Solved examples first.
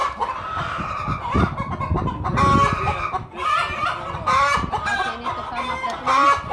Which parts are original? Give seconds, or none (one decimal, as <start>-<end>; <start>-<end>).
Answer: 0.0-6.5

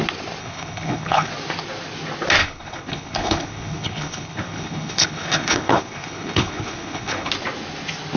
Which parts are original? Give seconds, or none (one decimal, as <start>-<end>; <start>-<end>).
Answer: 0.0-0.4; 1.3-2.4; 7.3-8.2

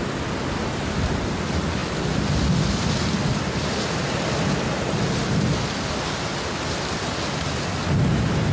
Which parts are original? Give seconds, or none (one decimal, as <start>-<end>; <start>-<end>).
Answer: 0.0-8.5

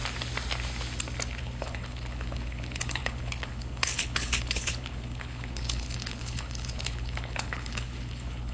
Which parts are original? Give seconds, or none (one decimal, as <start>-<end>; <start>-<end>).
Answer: 0.0-1.4

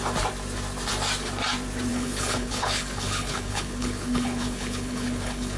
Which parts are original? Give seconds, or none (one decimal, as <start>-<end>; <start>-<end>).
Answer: 0.0-1.9

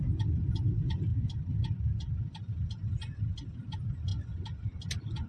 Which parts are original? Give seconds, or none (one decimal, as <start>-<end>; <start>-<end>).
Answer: 0.0-5.3

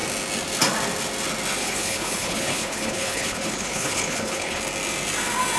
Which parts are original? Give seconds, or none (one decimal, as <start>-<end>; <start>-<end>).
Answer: 0.0-1.6; 4.6-5.6